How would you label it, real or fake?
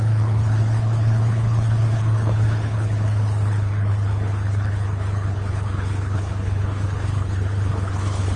fake